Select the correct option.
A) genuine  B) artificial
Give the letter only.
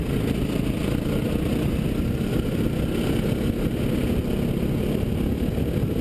A